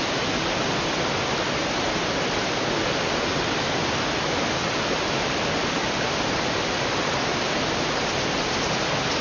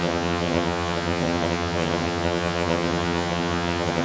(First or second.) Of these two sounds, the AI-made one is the second